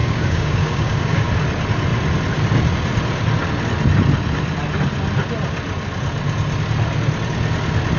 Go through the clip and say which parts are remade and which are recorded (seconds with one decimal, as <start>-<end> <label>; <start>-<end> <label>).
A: 0.0-1.3 remade; 1.3-8.0 recorded